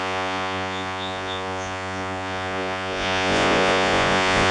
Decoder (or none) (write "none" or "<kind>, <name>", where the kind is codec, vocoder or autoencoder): vocoder, Vocos